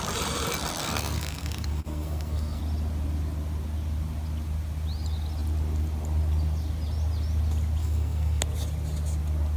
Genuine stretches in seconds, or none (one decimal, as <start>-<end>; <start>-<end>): 0.0-0.8; 2.6-7.8; 8.4-9.6